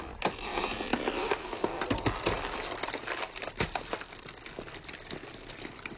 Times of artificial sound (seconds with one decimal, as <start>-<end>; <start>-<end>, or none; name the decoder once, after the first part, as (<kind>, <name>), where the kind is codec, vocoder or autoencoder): none